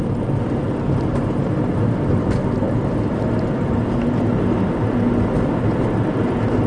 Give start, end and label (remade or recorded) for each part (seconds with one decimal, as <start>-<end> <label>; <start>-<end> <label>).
0.0-1.1 recorded; 1.1-3.7 remade; 3.7-6.7 recorded